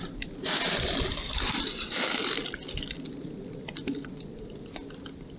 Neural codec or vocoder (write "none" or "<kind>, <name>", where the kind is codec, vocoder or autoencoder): none